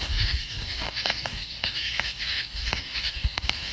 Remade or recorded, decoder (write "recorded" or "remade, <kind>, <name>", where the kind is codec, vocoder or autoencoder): remade, codec, DAC